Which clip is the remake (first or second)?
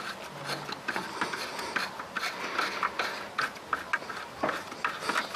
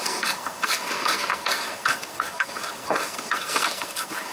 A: second